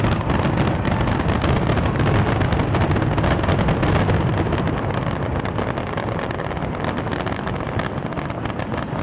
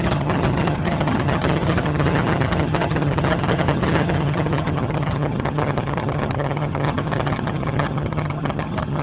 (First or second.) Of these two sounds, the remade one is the second